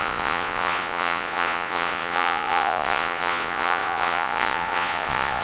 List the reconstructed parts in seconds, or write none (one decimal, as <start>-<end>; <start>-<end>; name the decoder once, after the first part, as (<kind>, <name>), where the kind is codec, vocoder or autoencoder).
0.0-5.4 (vocoder, Vocos)